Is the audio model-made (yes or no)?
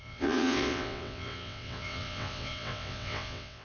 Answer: yes